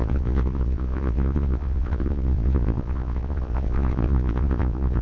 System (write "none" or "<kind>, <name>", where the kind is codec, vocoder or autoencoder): vocoder, Vocos